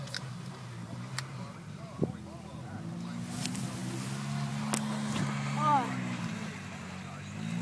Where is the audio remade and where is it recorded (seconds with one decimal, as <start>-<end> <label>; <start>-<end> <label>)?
0.0-7.6 recorded

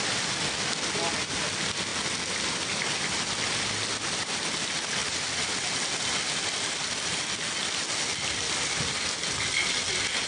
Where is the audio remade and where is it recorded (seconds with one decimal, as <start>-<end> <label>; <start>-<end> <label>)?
0.0-10.3 recorded

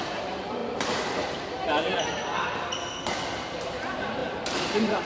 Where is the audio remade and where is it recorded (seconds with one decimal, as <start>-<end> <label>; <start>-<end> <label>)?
0.0-0.6 remade; 0.6-3.6 recorded; 3.6-5.0 remade

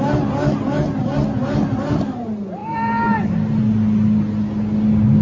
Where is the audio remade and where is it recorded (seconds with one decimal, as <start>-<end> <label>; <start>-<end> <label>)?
0.0-5.2 recorded

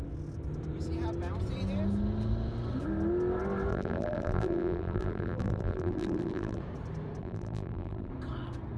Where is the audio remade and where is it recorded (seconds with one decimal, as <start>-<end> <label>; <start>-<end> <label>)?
0.0-3.7 recorded; 3.7-6.6 remade; 6.6-7.2 recorded; 7.2-8.1 remade; 8.1-8.8 recorded

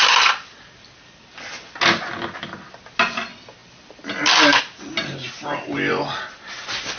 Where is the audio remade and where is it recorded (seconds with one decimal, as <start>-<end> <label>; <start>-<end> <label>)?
0.0-3.6 recorded; 3.6-4.6 remade; 4.6-7.0 recorded